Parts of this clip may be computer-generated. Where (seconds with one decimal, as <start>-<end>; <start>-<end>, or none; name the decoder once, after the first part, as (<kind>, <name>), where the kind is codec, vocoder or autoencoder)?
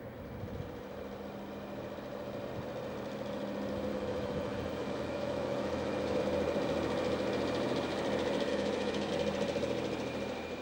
3.9-6.2 (autoencoder, DAC-VAE); 8.5-9.1